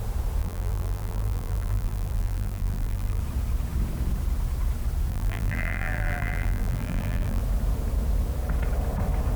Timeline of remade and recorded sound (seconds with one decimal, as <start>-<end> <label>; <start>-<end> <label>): 0.0-0.4 recorded; 0.4-3.2 remade; 3.2-5.1 recorded; 5.1-7.4 remade; 7.4-9.4 recorded